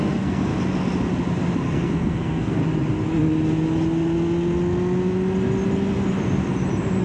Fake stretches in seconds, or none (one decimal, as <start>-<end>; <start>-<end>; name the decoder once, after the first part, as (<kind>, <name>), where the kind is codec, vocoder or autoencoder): 0.0-0.5 (codec, SNAC); 1.6-2.6